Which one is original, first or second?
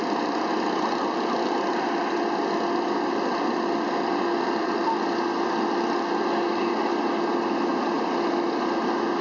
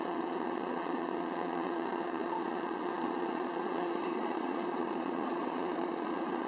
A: first